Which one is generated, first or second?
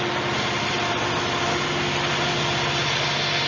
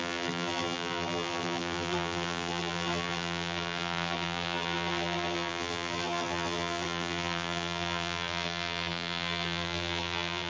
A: second